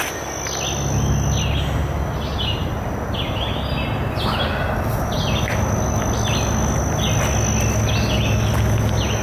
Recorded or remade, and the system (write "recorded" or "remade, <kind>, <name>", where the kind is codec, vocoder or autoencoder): recorded